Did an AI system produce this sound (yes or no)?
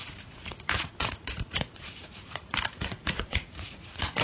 yes